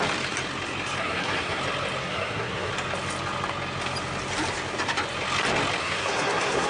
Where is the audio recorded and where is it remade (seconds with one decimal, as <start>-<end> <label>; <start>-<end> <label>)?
0.0-1.0 recorded; 1.0-1.6 remade; 1.6-2.0 recorded; 2.0-2.7 remade; 2.7-5.8 recorded; 5.8-6.7 remade